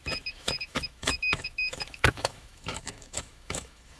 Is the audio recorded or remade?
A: remade